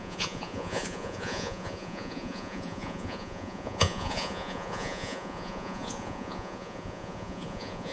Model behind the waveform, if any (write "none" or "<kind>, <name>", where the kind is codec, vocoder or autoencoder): vocoder, Vocos